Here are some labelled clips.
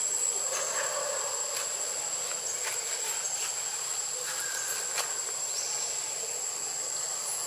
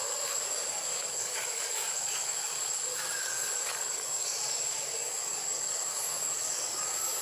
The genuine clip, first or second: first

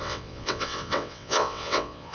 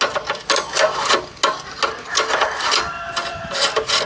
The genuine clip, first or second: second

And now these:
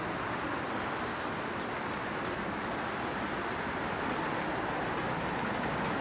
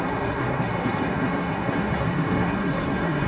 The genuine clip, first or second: first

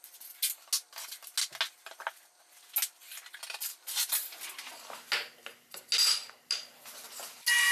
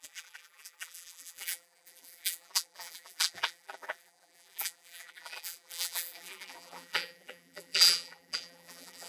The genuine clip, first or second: first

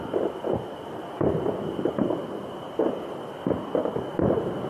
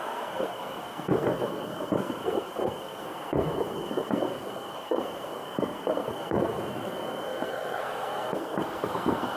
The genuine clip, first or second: first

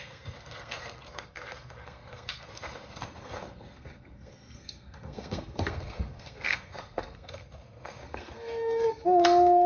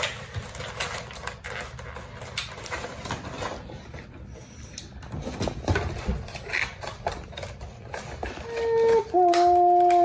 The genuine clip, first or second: second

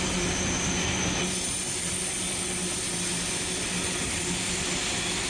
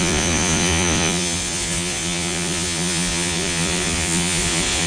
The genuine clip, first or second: first